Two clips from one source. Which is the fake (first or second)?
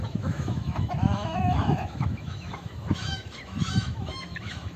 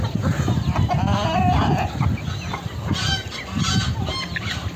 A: first